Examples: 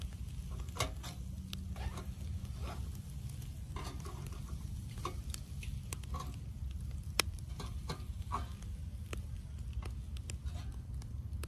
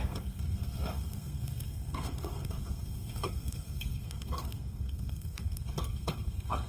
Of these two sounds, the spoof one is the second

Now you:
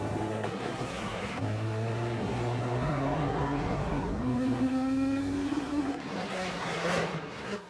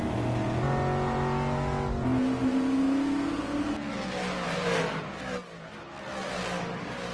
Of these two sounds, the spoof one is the first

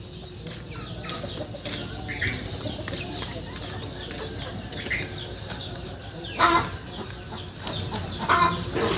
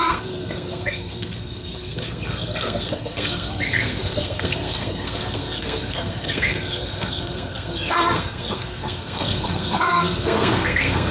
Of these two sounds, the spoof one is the second